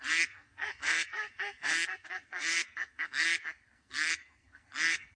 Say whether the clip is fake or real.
fake